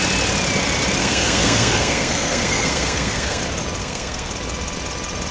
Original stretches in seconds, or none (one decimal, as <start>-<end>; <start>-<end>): 0.0-1.0; 3.4-3.8; 4.3-5.3